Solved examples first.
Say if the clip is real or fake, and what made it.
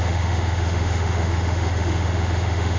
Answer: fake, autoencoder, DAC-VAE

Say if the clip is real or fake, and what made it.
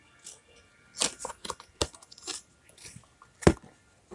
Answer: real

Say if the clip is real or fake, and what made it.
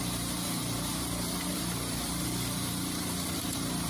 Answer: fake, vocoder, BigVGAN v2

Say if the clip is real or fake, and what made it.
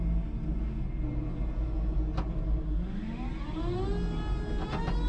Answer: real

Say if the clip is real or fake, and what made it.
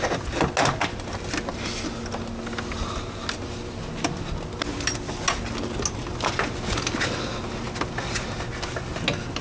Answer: real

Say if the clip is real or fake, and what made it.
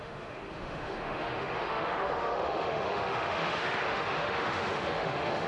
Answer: fake, autoencoder, DAC-VAE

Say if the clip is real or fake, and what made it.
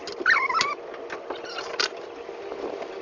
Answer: real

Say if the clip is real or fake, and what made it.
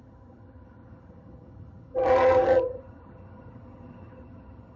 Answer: fake, vocoder, HiFi-GAN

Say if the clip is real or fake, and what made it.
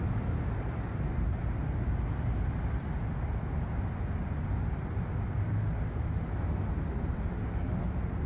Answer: real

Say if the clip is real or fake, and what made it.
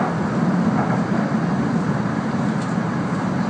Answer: real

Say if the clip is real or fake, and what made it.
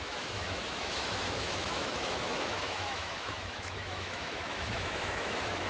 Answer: fake, autoencoder, DAC-VAE